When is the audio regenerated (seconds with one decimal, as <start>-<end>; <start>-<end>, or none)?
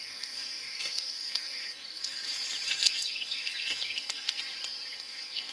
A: 0.0-2.2; 2.7-4.4; 4.9-5.5